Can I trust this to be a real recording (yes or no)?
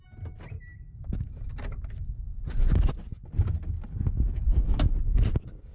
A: yes